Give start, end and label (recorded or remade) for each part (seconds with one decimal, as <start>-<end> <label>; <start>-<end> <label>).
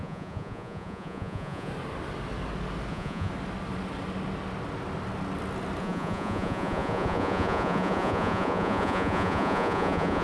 0.0-1.7 remade; 1.7-2.9 recorded; 2.9-3.3 remade; 3.3-5.8 recorded; 5.8-10.2 remade